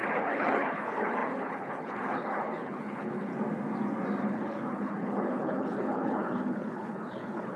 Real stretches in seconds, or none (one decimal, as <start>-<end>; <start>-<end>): 3.3-4.2